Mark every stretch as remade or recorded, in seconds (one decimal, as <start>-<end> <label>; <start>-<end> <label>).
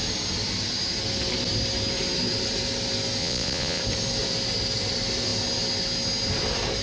0.0-3.2 recorded; 3.2-3.8 remade; 3.8-6.8 recorded